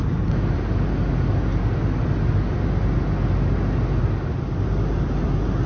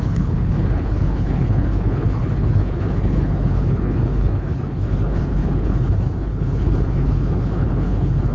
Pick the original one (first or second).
first